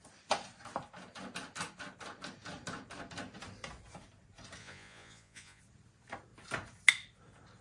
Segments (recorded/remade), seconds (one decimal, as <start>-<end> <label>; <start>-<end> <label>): 0.0-4.6 recorded; 4.6-5.6 remade; 5.6-7.6 recorded